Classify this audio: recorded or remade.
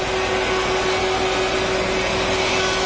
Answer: recorded